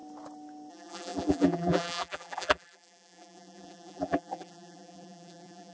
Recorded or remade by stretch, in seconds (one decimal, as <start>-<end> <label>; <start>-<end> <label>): 0.0-0.7 recorded; 0.7-5.7 remade

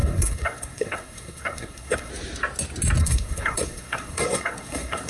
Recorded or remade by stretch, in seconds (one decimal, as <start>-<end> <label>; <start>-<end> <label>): 0.0-2.1 remade; 2.1-3.0 recorded; 3.0-5.1 remade

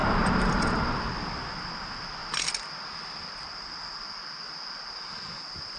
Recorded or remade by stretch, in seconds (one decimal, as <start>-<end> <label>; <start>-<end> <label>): 0.0-5.8 recorded

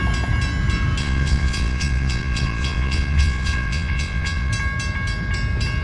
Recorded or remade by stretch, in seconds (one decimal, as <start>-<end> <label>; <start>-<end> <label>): 0.0-1.0 recorded; 1.0-4.5 remade; 4.5-5.8 recorded

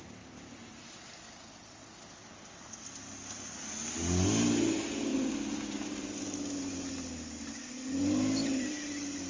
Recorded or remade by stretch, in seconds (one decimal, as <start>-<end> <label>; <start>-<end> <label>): 0.0-9.3 recorded

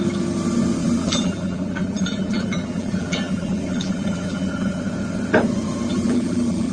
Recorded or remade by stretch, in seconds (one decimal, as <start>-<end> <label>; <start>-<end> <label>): 0.0-0.8 recorded; 0.8-4.8 remade; 4.8-5.9 recorded; 5.9-6.7 remade